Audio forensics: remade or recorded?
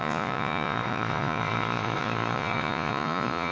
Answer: remade